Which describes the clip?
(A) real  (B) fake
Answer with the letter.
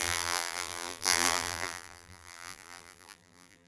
B